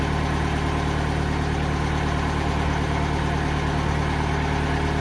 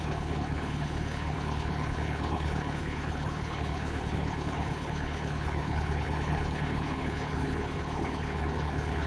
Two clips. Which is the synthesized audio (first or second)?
second